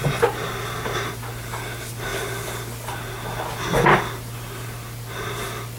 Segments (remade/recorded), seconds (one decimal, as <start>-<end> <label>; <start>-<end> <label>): 0.0-5.8 recorded